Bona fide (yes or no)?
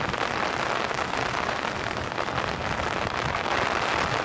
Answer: yes